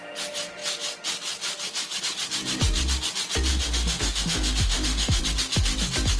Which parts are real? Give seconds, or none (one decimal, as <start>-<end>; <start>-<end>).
0.0-3.5; 5.2-6.2